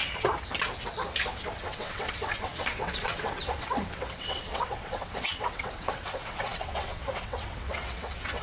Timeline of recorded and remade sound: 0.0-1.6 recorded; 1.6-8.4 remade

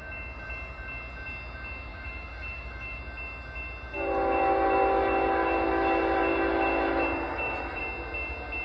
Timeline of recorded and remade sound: 0.0-1.9 recorded; 1.9-3.0 remade; 3.0-7.3 recorded; 7.3-7.8 remade; 7.8-8.6 recorded

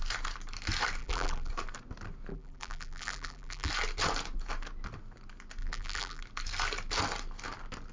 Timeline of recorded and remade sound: 0.0-1.0 recorded; 1.0-1.5 remade; 1.5-2.3 recorded; 2.3-3.7 remade; 3.7-5.6 recorded; 5.6-6.2 remade; 6.2-7.9 recorded

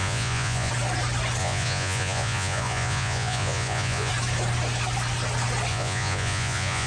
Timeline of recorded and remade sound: 0.0-0.7 remade; 0.7-1.4 recorded; 1.4-4.1 remade; 4.1-5.7 recorded; 5.7-6.9 remade

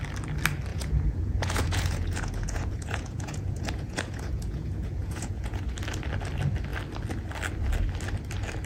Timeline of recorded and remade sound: 0.0-0.7 recorded; 0.7-5.6 remade; 5.6-8.7 recorded